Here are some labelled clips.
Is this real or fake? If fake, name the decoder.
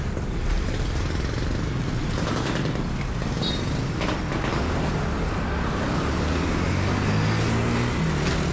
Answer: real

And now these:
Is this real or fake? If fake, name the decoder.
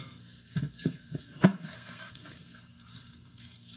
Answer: fake, codec, SNAC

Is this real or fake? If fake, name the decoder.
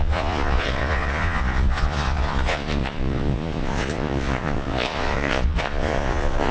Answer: fake, vocoder, Vocos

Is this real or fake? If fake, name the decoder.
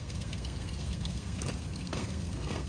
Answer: fake, codec, SNAC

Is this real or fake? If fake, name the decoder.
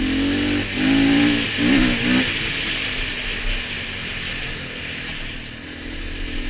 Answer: real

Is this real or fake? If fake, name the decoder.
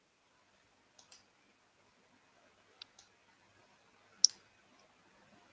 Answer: real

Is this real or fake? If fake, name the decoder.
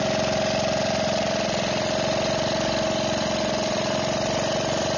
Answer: real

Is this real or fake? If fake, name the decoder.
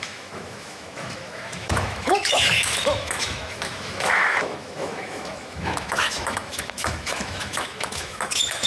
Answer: fake, autoencoder, DAC-VAE